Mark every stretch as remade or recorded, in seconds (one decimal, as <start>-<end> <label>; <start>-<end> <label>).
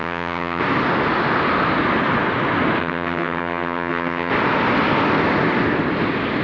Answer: 0.0-0.6 remade; 0.6-2.8 recorded; 2.8-4.3 remade; 4.3-6.4 recorded